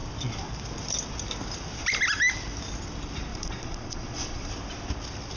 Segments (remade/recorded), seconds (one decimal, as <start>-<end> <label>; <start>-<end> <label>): 0.0-3.3 recorded; 3.3-4.5 remade; 4.5-5.4 recorded